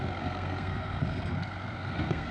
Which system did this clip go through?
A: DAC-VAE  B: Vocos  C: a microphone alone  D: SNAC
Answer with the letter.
D